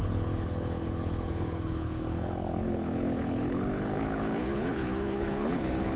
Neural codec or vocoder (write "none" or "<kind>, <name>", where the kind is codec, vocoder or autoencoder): codec, HILCodec